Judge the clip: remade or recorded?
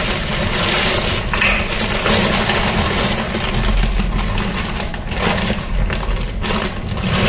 recorded